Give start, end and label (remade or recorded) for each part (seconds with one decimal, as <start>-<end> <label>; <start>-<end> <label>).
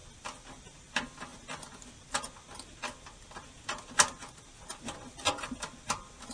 0.0-6.3 recorded